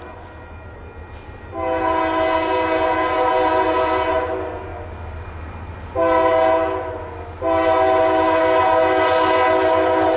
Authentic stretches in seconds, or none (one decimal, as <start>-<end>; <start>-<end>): 0.0-10.2